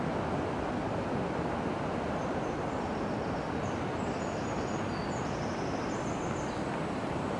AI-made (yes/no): no